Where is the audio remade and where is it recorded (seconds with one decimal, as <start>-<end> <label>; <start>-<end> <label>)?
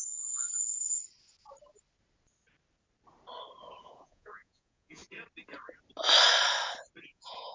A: 0.0-0.5 remade; 0.5-3.8 recorded; 3.8-5.0 remade; 5.0-7.0 recorded; 7.0-7.5 remade